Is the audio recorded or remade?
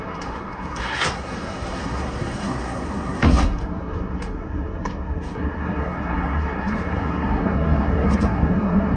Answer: remade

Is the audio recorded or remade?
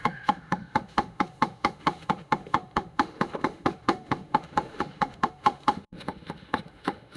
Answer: remade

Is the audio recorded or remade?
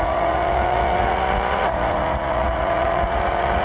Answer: remade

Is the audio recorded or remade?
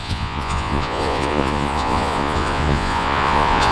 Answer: remade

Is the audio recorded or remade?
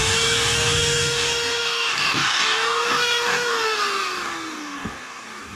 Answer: remade